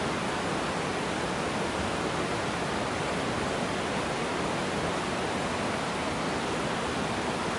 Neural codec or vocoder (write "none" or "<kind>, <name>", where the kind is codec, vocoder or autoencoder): none